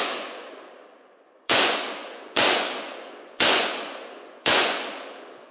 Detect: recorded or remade remade